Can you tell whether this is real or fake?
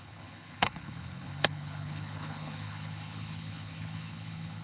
fake